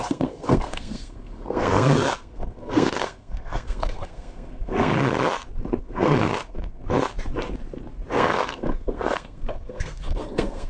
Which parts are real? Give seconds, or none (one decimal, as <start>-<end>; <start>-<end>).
4.9-5.8; 6.8-8.1